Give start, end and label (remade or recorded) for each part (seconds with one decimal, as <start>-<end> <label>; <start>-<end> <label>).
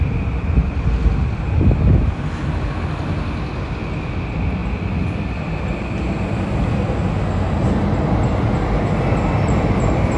0.0-0.6 recorded; 0.6-1.4 remade; 1.4-10.2 recorded